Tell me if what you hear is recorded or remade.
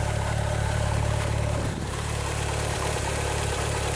remade